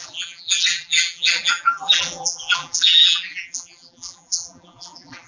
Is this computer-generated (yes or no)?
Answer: yes